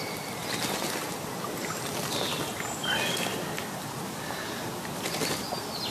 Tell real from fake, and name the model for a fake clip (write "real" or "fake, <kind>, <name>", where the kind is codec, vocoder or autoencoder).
real